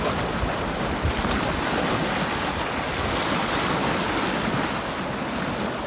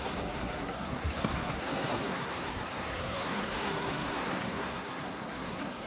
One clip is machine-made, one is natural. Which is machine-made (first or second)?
second